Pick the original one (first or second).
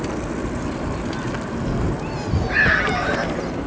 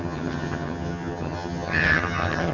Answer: first